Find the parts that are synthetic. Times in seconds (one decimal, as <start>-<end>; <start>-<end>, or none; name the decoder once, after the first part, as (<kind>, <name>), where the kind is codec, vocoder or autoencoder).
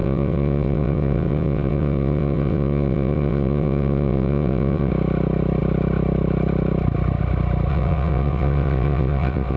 0.0-4.9 (vocoder, WaveNeXt); 7.7-9.6